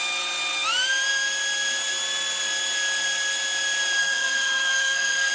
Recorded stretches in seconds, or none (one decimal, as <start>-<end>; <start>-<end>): 0.0-4.0